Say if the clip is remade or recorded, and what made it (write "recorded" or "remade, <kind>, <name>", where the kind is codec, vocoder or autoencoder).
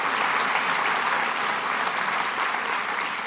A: recorded